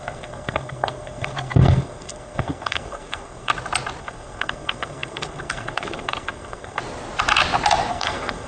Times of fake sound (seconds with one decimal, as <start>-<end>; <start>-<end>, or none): 0.0-3.5; 4.0-6.8; 7.9-8.5